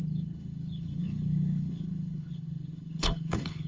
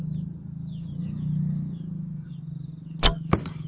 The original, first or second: second